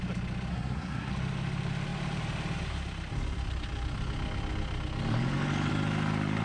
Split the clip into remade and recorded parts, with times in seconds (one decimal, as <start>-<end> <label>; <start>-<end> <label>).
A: 0.0-0.5 recorded; 0.5-1.1 remade; 1.1-6.4 recorded